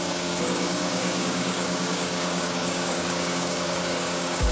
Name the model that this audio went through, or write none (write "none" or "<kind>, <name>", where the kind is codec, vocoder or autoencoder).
codec, DAC